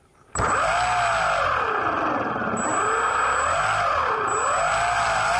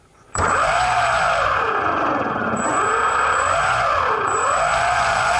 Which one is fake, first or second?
second